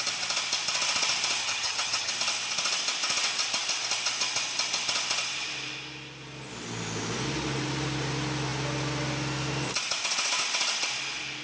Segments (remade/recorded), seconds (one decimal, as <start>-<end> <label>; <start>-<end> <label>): 0.0-1.4 recorded; 1.4-2.1 remade; 2.1-11.4 recorded